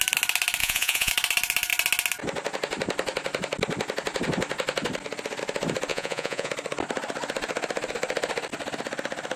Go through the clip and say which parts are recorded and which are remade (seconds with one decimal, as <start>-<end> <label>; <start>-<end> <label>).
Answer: 0.0-0.6 recorded; 0.6-1.1 remade; 1.1-5.9 recorded; 5.9-6.5 remade; 6.5-9.4 recorded